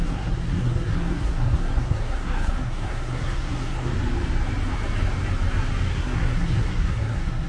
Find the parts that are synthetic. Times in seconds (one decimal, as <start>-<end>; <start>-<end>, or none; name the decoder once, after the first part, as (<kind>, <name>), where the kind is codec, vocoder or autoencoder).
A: 0.0-3.9 (codec, SNAC); 5.9-7.5